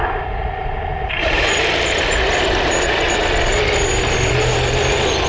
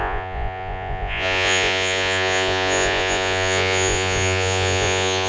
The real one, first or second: first